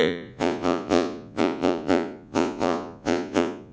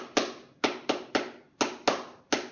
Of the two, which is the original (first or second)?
second